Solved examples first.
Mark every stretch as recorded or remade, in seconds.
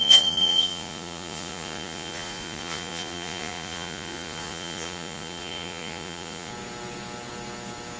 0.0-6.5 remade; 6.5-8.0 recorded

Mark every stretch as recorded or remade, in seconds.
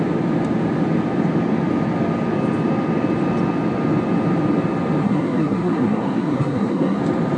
0.0-5.0 recorded; 5.0-7.0 remade; 7.0-7.4 recorded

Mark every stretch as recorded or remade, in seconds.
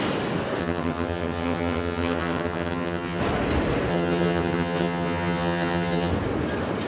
0.0-0.6 recorded; 0.6-3.2 remade; 3.2-3.9 recorded; 3.9-6.1 remade; 6.1-6.9 recorded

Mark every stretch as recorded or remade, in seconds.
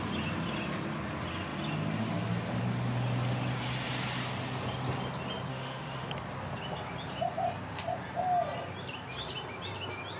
0.0-5.5 recorded; 5.5-6.1 remade; 6.1-10.2 recorded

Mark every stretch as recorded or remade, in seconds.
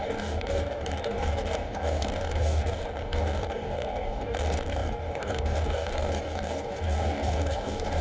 0.0-8.0 remade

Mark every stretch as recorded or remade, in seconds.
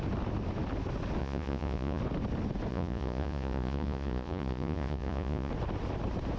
0.0-1.2 recorded; 1.2-2.0 remade; 2.0-2.7 recorded; 2.7-5.5 remade; 5.5-6.4 recorded